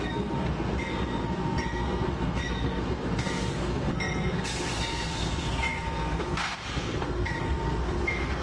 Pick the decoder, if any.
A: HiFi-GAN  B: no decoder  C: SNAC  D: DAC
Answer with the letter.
C